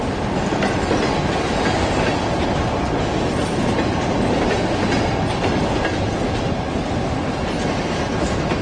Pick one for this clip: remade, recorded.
recorded